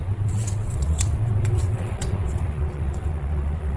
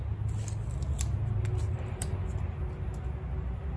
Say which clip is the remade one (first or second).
first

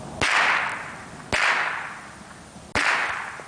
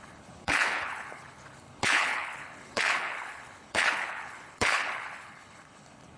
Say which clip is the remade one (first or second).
second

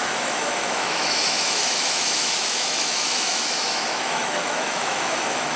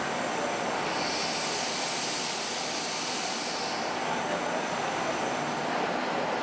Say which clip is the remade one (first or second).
first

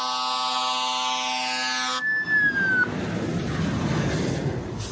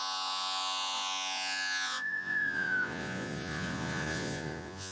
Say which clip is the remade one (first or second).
second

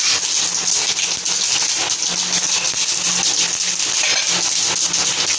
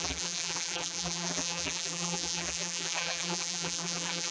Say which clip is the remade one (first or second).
second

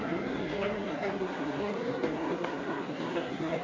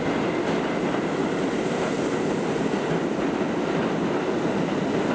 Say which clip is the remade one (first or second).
first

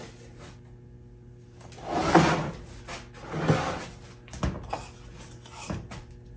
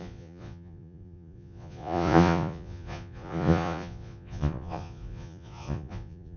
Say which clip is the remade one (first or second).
second